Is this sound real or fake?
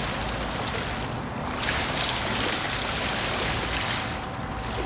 real